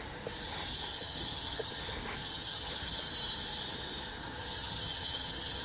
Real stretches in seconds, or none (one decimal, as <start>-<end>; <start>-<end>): 0.0-0.9; 1.8-2.2; 3.0-4.2